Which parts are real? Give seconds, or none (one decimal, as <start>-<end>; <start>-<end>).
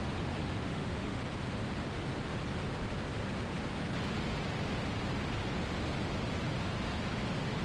0.0-0.4; 1.2-7.6